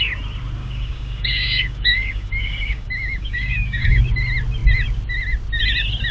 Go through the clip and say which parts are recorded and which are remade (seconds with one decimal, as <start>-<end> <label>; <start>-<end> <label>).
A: 0.0-0.6 recorded; 0.6-4.0 remade; 4.0-6.1 recorded